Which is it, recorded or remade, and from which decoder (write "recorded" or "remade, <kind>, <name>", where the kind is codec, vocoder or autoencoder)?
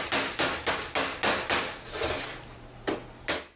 recorded